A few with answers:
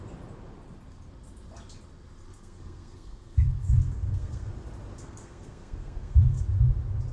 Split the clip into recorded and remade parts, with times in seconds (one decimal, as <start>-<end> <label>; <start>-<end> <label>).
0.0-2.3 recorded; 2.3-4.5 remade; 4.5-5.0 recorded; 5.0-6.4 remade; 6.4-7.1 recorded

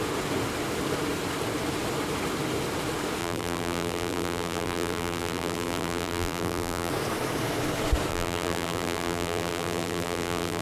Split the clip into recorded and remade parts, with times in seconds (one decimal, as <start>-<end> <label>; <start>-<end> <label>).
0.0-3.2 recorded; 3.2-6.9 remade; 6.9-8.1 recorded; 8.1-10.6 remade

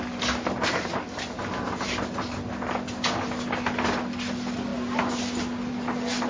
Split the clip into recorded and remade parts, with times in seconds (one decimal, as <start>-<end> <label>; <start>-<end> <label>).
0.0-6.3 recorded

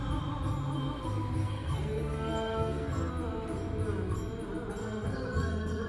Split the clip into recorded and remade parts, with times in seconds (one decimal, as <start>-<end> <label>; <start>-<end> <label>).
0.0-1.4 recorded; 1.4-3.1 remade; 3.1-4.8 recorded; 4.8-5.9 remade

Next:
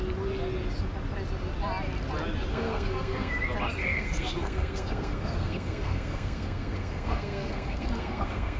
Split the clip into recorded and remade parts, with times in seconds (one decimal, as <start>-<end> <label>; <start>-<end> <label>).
0.0-2.5 recorded; 2.5-3.4 remade; 3.4-3.8 recorded; 3.8-8.6 remade